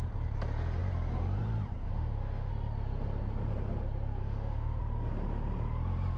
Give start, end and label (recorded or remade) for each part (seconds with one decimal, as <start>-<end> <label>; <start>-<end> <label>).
0.0-1.8 recorded; 1.8-2.5 remade; 2.5-4.2 recorded; 4.2-4.8 remade; 4.8-6.2 recorded